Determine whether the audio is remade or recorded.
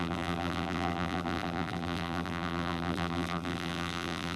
remade